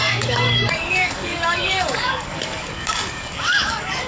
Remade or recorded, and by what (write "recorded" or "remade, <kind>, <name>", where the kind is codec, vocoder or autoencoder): remade, codec, DAC